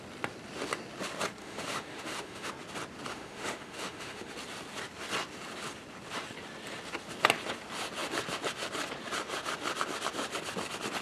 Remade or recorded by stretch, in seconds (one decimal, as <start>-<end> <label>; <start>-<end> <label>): 0.0-1.4 recorded; 1.4-2.5 remade; 2.5-3.1 recorded; 3.1-4.3 remade; 4.3-11.0 recorded